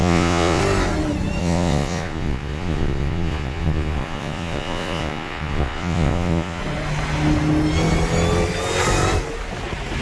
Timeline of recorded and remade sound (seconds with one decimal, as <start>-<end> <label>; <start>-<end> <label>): 0.0-0.6 remade; 0.6-1.4 recorded; 1.4-6.6 remade; 6.6-10.0 recorded